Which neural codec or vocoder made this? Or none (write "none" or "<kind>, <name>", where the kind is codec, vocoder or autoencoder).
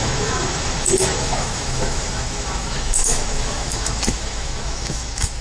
autoencoder, DAC-VAE